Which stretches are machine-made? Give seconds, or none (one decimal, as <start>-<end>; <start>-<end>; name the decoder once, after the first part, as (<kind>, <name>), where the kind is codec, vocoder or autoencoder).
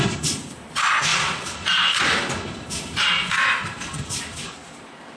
0.0-1.1 (vocoder, BigVGAN v2); 4.2-5.2